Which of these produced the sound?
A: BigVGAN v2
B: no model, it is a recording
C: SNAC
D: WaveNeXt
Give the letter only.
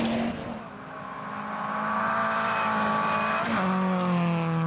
B